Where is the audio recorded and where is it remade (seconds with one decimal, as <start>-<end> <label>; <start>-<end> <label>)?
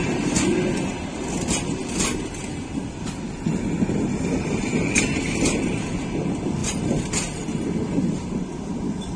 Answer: 0.0-9.2 recorded